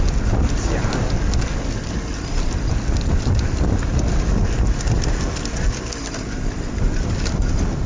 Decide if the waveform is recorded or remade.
recorded